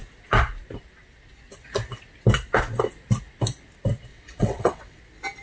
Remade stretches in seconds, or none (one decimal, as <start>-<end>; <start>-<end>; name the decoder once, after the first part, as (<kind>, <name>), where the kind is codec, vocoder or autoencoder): 4.1-5.0 (vocoder, WaveNeXt)

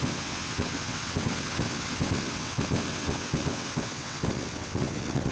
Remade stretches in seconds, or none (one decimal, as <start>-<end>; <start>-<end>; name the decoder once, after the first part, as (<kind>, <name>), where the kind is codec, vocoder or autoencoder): 0.0-5.3 (vocoder, WaveNeXt)

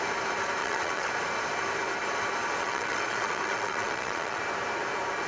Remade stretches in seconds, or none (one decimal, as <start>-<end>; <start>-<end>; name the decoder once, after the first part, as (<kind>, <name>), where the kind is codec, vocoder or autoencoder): 0.6-1.1 (vocoder, WaveNeXt); 2.6-4.4

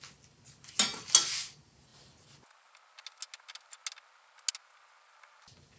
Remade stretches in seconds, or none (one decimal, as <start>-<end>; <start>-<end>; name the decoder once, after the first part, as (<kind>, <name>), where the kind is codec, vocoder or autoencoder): none

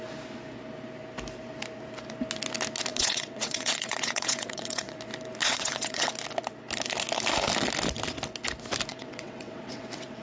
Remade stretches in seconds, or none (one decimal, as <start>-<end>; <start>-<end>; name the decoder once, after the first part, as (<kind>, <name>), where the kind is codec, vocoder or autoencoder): 2.9-5.0 (vocoder, WaveNeXt); 5.4-6.1; 8.9-10.2

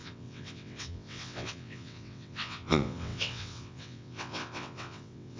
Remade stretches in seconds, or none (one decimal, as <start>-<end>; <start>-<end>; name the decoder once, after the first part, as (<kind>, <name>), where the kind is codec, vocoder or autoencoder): 0.0-5.4 (vocoder, WaveNeXt)

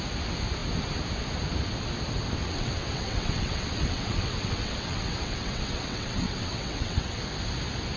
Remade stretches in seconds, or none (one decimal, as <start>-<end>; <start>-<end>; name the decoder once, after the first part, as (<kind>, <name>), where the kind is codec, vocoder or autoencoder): 2.4-7.2 (vocoder, WaveNeXt)